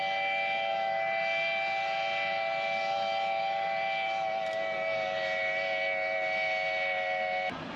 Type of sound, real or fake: real